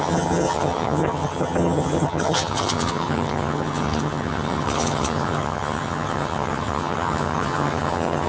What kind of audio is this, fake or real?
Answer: fake